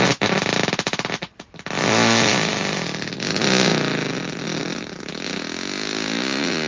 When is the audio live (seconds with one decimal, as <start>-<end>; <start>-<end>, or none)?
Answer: 0.0-6.7